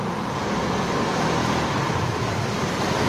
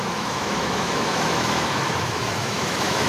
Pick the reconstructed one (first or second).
second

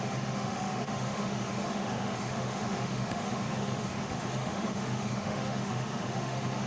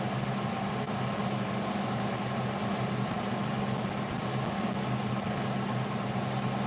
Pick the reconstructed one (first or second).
first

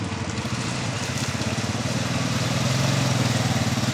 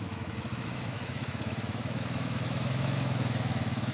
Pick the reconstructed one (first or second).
second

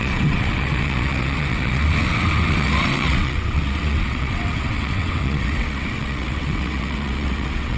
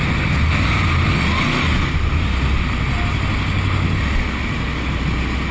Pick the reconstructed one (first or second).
first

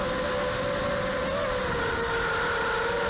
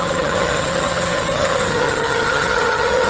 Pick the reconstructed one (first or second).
second